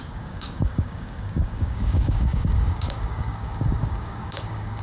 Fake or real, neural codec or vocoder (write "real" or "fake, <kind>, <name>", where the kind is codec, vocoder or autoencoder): fake, codec, DAC